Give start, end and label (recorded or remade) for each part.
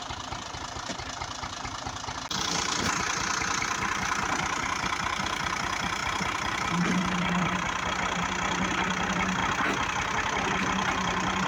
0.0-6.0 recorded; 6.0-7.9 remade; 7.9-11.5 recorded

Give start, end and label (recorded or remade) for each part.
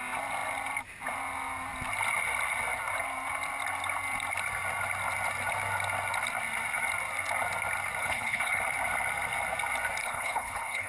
0.0-8.0 recorded; 8.0-8.6 remade; 8.6-10.0 recorded; 10.0-10.9 remade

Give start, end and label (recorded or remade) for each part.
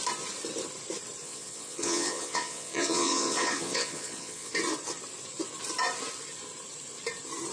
0.0-1.2 recorded; 1.2-4.5 remade; 4.5-7.5 recorded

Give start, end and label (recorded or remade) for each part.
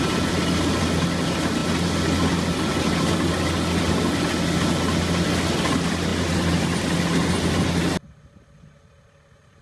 0.0-9.6 recorded